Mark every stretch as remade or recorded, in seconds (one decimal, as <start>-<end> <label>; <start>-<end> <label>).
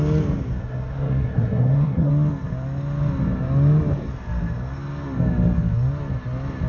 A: 0.0-0.6 recorded; 0.6-2.1 remade; 2.1-6.7 recorded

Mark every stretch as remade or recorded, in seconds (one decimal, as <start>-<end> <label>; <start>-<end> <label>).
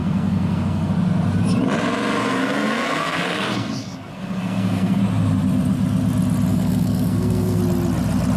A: 0.0-0.9 remade; 0.9-2.2 recorded; 2.2-5.0 remade; 5.0-6.5 recorded; 6.5-7.6 remade; 7.6-8.4 recorded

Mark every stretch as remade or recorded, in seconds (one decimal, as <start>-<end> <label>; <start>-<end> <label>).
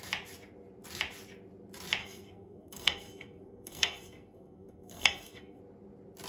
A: 0.0-2.0 recorded; 2.0-5.6 remade; 5.6-6.3 recorded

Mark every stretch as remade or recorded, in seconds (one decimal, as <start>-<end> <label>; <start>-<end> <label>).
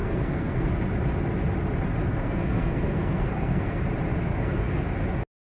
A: 0.0-0.7 remade; 0.7-2.1 recorded; 2.1-3.8 remade; 3.8-4.3 recorded; 4.3-4.8 remade; 4.8-5.5 recorded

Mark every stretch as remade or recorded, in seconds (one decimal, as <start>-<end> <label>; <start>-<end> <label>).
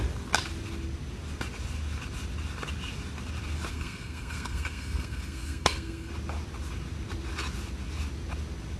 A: 0.0-3.7 recorded; 3.7-6.1 remade; 6.1-8.8 recorded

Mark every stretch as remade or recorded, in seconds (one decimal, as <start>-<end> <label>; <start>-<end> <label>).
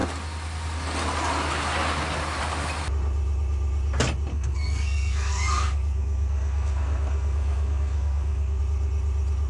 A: 0.0-4.3 recorded; 4.3-8.6 remade; 8.6-9.5 recorded